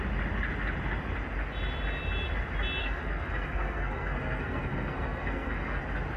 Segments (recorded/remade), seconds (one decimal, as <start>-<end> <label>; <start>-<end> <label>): 0.0-2.8 recorded; 2.8-5.8 remade; 5.8-6.2 recorded